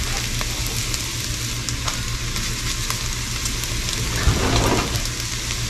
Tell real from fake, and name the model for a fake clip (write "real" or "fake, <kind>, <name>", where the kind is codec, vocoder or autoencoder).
real